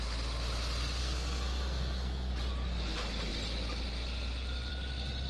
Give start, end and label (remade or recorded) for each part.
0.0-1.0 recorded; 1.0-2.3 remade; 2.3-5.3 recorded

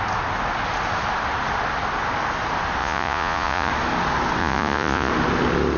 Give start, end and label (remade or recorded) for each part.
0.0-2.8 recorded; 2.8-3.7 remade; 3.7-4.4 recorded; 4.4-5.1 remade; 5.1-5.8 recorded

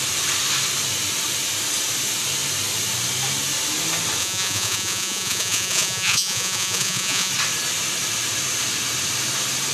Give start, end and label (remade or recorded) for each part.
0.0-4.2 recorded; 4.2-7.3 remade; 7.3-9.7 recorded